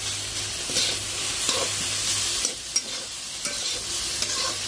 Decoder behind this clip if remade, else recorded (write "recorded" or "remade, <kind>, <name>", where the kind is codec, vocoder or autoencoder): recorded